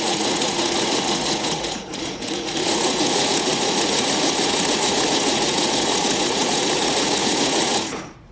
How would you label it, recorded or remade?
remade